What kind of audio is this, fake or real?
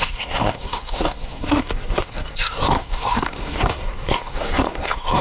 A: fake